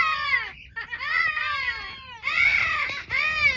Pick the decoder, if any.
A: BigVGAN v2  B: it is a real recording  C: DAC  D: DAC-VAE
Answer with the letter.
B